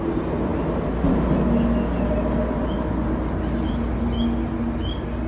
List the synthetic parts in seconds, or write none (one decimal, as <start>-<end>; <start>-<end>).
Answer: none